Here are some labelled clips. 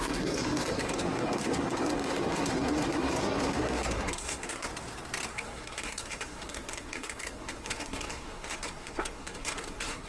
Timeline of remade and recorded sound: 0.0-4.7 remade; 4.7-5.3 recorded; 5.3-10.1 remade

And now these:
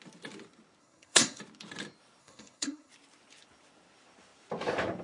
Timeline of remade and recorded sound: 0.0-0.8 recorded; 0.8-1.4 remade; 1.4-2.2 recorded; 2.2-2.9 remade; 2.9-5.0 recorded

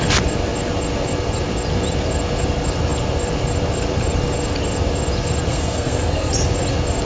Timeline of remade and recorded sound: 0.0-5.5 recorded; 5.5-6.3 remade; 6.3-7.1 recorded

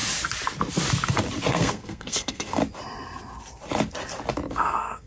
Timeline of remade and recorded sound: 0.0-1.5 recorded; 1.5-2.6 remade; 2.6-4.5 recorded; 4.5-5.1 remade

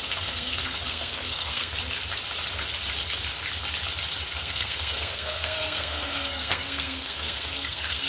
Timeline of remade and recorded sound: 0.0-1.7 remade; 1.7-4.3 recorded; 4.3-8.1 remade